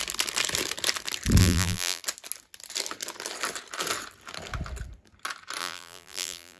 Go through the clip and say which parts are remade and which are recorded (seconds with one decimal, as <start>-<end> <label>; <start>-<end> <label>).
0.0-1.4 recorded; 1.4-2.0 remade; 2.0-5.6 recorded; 5.6-6.6 remade